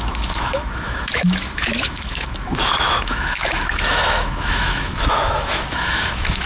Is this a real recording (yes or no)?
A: no